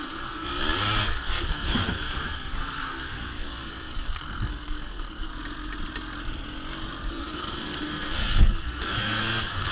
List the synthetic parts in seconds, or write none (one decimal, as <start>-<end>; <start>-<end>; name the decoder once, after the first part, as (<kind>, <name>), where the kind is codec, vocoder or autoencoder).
0.0-0.5 (codec, SNAC); 1.0-5.3; 7.1-9.7